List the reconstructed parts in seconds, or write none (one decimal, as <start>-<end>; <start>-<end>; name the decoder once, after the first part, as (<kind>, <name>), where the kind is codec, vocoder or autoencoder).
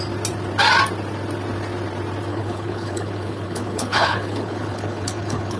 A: 2.3-5.6 (codec, HILCodec)